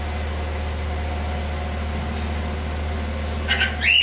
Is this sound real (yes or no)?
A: yes